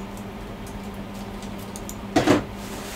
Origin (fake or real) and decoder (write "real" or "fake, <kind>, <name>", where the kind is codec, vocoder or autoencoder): real